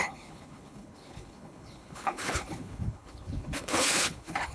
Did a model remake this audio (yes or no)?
yes